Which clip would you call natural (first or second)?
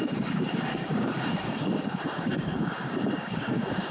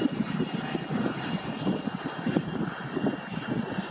second